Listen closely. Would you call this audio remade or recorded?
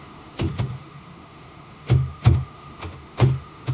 remade